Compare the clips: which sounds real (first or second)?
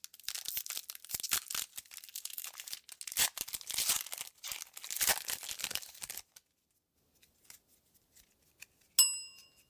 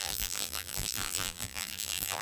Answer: first